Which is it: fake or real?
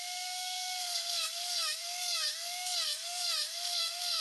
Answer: fake